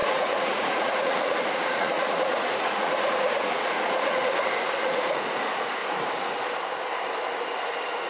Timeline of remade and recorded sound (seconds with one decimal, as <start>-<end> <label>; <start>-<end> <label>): 0.0-5.8 remade; 5.8-8.1 recorded